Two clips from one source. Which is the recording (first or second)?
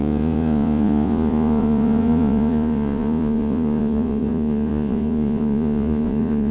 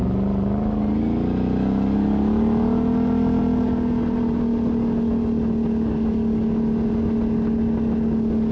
second